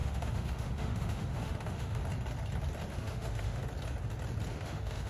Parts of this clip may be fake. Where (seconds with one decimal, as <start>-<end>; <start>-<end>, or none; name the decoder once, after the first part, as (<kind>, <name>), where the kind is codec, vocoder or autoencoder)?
0.0-2.0 (autoencoder, DAC-VAE); 2.9-3.6; 4.5-5.1